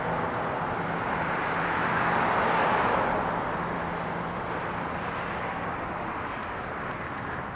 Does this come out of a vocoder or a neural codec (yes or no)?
no